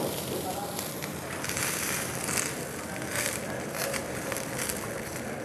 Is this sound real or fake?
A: fake